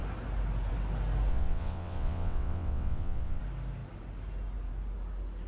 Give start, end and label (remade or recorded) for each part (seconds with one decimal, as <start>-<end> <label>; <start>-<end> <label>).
0.0-1.3 recorded; 1.3-3.4 remade; 3.4-5.5 recorded